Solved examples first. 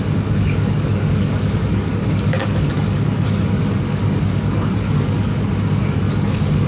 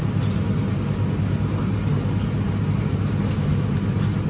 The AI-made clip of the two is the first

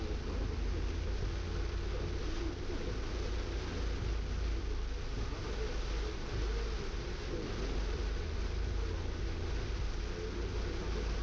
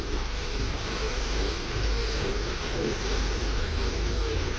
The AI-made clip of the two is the second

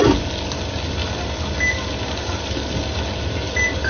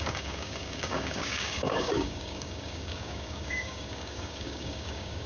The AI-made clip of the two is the second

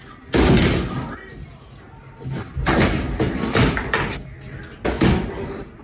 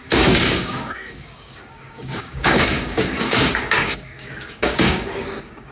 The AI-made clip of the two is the second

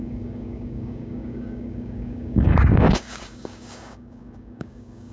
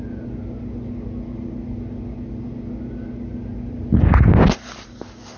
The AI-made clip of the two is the first